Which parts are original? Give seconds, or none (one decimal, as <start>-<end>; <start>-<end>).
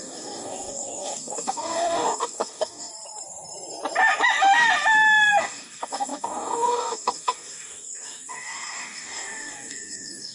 2.9-5.4